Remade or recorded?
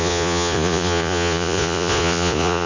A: remade